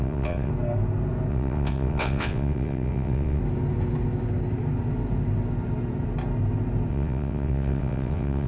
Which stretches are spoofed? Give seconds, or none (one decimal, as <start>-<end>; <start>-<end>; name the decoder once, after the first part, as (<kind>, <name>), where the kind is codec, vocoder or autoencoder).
0.0-0.5 (vocoder, WaveNeXt); 1.3-3.4; 6.9-8.5